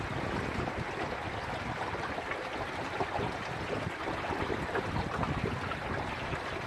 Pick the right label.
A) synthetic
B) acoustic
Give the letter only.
B